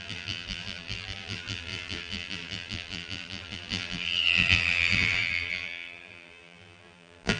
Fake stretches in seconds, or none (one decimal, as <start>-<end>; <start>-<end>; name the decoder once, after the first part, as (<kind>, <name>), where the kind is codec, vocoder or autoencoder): 0.0-7.4 (vocoder, BigVGAN v2)